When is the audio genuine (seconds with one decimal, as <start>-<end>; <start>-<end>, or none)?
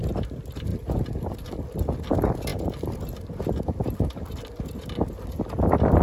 0.0-0.7; 1.5-6.0